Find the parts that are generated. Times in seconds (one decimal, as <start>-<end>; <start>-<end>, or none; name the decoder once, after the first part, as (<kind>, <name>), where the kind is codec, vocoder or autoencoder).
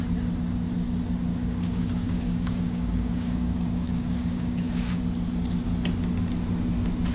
1.3-5.0 (codec, DAC)